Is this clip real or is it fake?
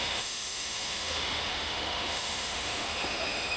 fake